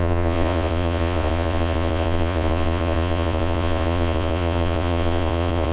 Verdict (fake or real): fake